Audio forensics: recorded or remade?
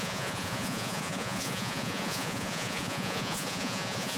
remade